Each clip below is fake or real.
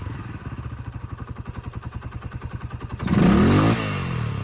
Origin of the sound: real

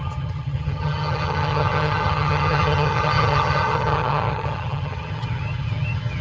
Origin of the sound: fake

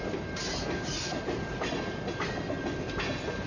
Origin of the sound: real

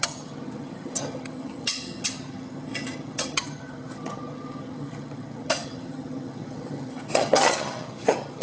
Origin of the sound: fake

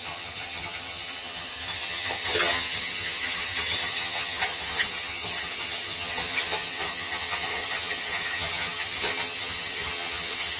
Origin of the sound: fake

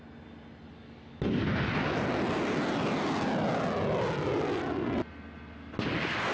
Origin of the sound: real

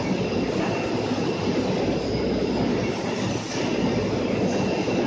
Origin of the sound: real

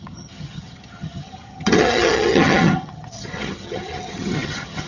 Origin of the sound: fake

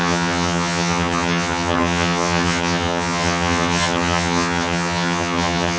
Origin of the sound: fake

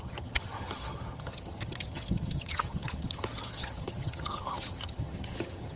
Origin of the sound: fake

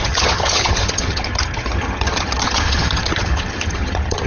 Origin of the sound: fake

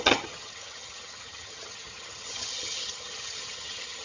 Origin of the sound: fake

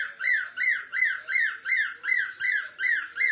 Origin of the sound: real